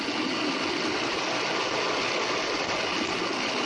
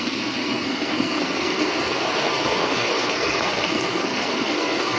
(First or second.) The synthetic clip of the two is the second